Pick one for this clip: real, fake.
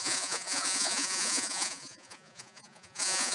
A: fake